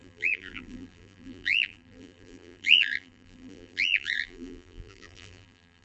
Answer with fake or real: fake